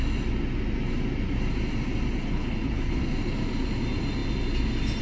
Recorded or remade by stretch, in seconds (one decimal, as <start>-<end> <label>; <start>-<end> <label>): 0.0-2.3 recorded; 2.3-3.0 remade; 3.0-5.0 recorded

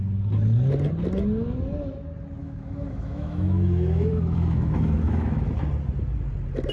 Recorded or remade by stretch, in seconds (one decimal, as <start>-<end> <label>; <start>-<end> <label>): 0.0-2.4 recorded; 2.4-5.5 remade; 5.5-6.7 recorded

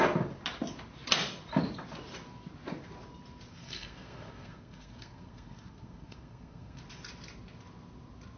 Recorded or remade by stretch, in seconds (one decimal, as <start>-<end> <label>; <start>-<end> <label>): 0.0-3.5 recorded; 3.5-6.8 remade; 6.8-8.4 recorded